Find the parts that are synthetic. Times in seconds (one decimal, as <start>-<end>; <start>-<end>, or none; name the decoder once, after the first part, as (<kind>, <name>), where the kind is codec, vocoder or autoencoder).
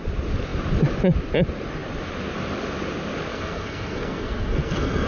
3.3-5.1 (codec, SNAC)